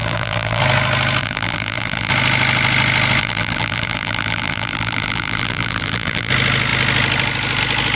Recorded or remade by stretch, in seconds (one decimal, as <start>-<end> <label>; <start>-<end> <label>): 0.0-0.6 remade; 0.6-1.2 recorded; 1.2-2.1 remade; 2.1-3.2 recorded; 3.2-6.3 remade; 6.3-8.0 recorded